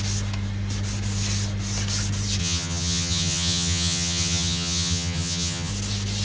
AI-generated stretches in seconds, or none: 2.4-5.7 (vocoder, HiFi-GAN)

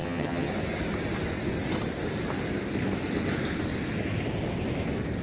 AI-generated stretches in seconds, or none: 0.0-0.5 (vocoder, HiFi-GAN)

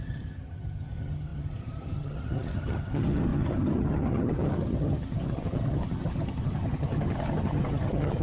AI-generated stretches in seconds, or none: 0.0-8.2 (vocoder, HiFi-GAN)

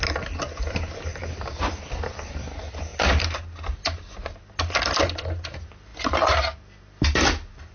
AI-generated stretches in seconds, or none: none

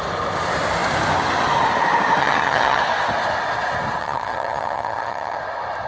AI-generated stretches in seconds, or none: 2.2-2.8 (vocoder, HiFi-GAN); 4.0-5.4